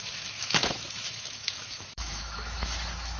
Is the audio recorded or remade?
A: remade